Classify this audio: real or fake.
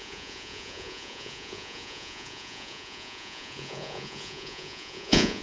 fake